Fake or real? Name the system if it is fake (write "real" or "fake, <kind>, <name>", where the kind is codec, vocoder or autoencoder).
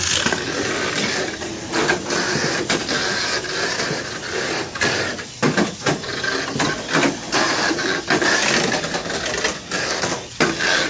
real